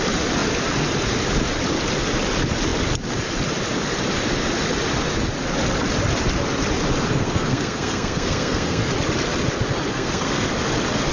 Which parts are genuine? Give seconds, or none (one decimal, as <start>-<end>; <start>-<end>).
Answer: 0.0-7.1; 8.9-9.9; 10.5-11.1